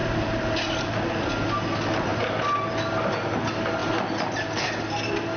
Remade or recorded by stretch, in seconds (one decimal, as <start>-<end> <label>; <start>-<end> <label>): 0.0-1.3 remade; 1.3-5.4 recorded